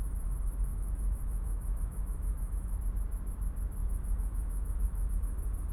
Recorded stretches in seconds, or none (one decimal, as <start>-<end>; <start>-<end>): 0.0-0.7; 2.8-3.8; 5.1-5.7